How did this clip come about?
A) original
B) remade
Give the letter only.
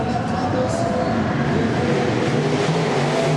A